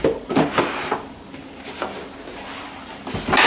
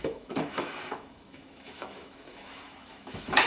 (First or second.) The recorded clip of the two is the first